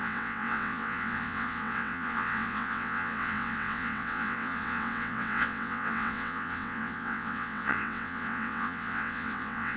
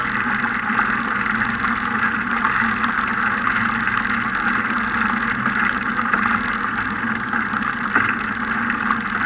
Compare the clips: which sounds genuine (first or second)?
second